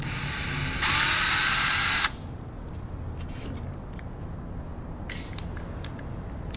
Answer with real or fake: real